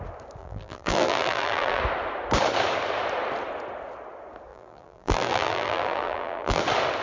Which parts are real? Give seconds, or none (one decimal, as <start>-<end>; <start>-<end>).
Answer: 0.0-0.4; 1.8-4.5; 6.6-7.0